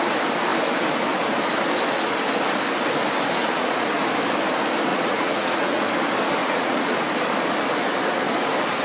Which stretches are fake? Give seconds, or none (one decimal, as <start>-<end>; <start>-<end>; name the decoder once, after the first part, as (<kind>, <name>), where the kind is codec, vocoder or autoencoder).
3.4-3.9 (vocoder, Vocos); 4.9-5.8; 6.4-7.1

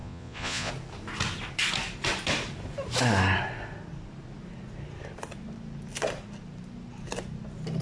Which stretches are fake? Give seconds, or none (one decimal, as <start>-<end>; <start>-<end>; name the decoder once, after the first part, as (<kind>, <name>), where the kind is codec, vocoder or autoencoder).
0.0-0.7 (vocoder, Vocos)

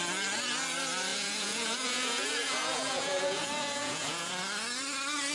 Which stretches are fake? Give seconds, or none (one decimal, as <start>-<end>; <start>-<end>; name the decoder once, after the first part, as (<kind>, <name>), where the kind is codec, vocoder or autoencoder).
1.1-4.3 (vocoder, Vocos)